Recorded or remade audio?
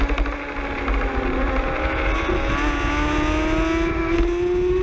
recorded